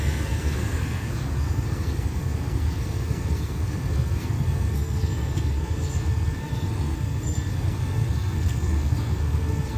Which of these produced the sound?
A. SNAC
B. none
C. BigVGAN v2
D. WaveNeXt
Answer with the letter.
A